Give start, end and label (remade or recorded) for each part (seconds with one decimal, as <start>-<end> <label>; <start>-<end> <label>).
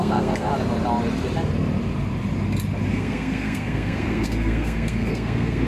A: 0.0-0.5 remade; 0.5-2.9 recorded; 2.9-5.7 remade